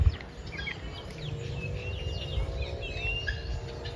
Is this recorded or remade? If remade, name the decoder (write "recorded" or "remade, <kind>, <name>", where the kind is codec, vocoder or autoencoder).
recorded